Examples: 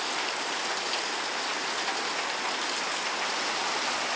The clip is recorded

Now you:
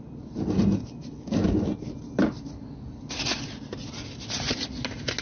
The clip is recorded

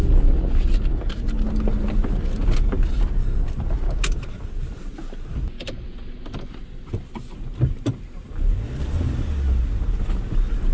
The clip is recorded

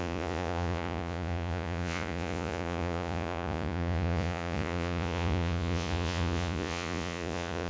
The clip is remade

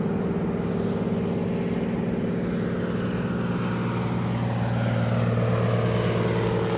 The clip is recorded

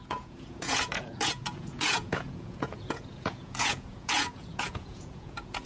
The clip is remade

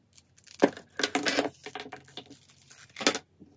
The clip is recorded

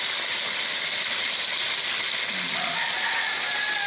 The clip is recorded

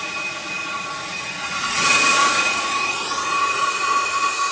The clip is remade